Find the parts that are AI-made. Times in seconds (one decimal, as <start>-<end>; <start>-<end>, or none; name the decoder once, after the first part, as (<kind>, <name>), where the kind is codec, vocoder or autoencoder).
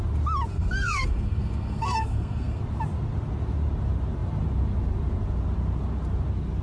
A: 0.5-2.6 (codec, SNAC)